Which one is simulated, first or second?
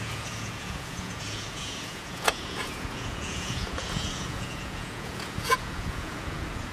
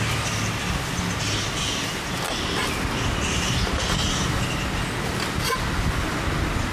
first